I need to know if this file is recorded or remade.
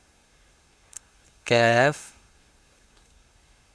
remade